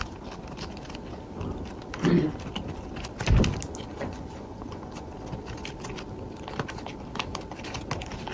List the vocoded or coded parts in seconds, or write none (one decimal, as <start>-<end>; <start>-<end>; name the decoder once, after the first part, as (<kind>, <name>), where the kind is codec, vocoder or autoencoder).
3.9-5.1 (vocoder, Vocos)